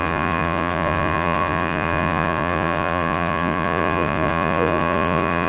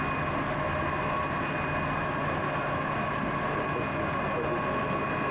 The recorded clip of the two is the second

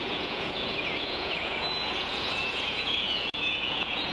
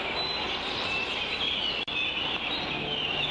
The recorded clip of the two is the second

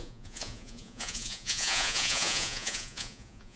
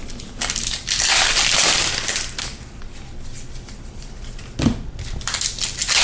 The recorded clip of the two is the second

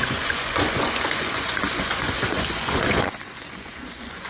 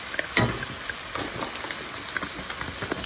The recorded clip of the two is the second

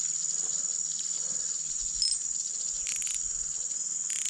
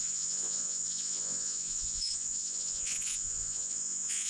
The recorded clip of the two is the first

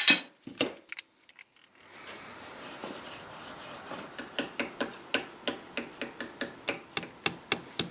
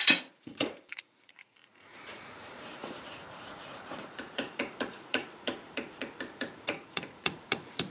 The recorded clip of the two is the first